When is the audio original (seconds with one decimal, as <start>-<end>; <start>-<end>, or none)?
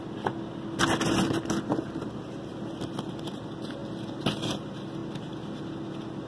0.0-6.3